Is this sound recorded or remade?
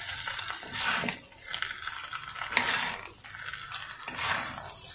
recorded